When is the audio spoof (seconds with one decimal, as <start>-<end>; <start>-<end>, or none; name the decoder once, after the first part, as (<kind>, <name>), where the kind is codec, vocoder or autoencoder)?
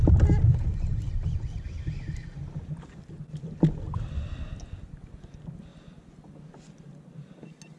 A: none